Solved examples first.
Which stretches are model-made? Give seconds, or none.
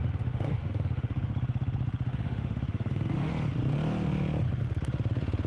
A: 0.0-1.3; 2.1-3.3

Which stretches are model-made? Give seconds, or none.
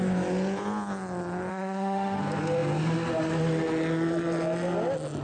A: 1.5-2.2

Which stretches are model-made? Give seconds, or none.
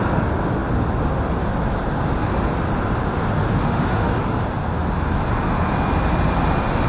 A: 3.4-4.1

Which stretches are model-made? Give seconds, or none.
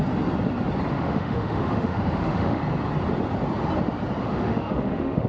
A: 0.9-2.6; 4.2-5.3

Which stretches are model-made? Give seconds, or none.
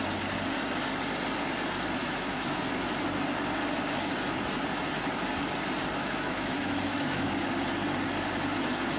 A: 2.0-2.6; 6.0-7.3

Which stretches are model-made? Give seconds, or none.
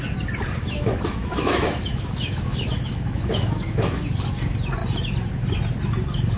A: 0.6-4.1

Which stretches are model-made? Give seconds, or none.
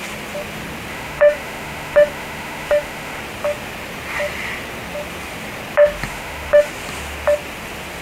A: 0.9-3.2; 6.1-6.7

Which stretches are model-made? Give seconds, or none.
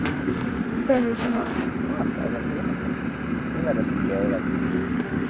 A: 0.0-1.5; 4.7-5.3